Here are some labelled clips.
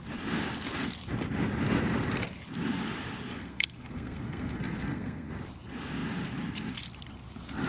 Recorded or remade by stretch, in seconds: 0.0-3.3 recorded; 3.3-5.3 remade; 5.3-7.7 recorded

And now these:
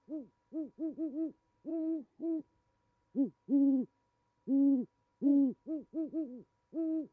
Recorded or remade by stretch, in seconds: 0.0-1.7 recorded; 1.7-2.4 remade; 2.4-7.1 recorded